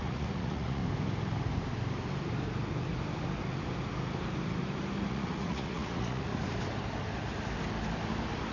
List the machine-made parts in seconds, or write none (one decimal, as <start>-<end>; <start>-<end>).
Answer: 0.0-0.8; 5.0-6.3